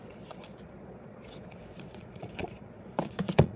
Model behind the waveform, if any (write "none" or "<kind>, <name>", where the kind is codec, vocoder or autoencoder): vocoder, Vocos